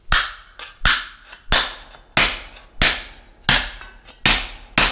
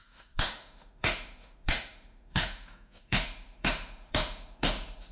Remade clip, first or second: second